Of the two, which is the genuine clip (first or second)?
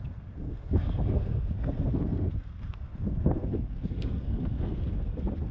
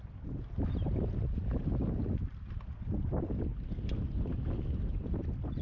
second